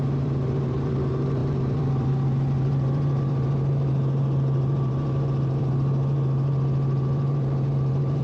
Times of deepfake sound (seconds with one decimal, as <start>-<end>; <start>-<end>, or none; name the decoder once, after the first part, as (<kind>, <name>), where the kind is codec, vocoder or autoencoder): 0.0-8.2 (vocoder, BigVGAN v2)